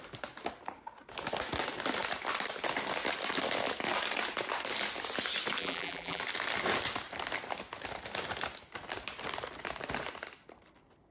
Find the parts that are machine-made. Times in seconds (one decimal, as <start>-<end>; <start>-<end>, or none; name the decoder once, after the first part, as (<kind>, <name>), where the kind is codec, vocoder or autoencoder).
5.6-6.2 (vocoder, BigVGAN v2)